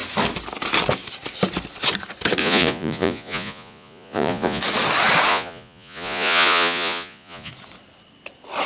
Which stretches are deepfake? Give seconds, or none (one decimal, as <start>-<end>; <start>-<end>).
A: 2.4-4.6; 5.3-7.5